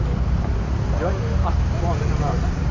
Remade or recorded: recorded